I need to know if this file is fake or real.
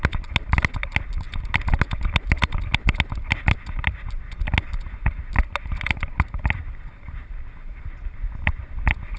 real